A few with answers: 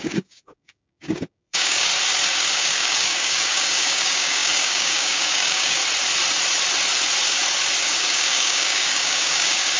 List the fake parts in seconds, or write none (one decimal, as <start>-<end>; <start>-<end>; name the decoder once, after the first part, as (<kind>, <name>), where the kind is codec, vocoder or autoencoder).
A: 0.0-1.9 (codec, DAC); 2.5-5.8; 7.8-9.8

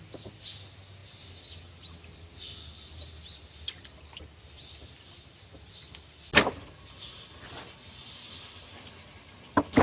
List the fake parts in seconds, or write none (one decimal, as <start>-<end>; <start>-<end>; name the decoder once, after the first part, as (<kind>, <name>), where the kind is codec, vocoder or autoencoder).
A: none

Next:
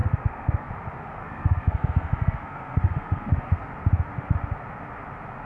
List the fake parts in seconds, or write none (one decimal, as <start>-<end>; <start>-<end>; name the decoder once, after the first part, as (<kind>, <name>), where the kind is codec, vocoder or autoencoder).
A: 0.0-0.7 (codec, SNAC); 1.2-3.7

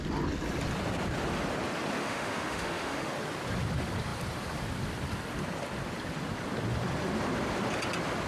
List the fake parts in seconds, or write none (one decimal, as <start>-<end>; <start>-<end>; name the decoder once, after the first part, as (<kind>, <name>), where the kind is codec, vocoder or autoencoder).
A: 2.0-3.1 (autoencoder, DAC-VAE)

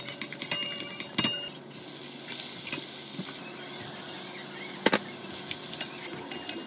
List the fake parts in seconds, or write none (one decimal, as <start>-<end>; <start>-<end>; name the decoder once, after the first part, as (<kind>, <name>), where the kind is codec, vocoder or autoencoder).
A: none